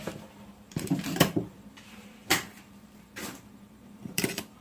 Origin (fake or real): fake